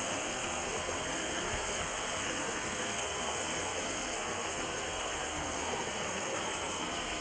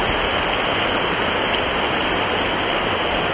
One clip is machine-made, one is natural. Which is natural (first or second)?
second